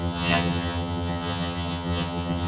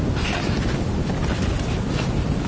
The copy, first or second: first